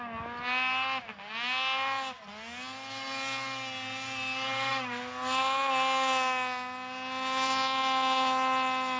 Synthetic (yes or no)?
no